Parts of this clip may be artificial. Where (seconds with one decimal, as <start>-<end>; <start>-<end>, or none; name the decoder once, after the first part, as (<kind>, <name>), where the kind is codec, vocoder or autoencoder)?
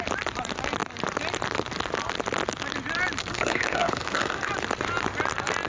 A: 3.2-4.5 (codec, SNAC)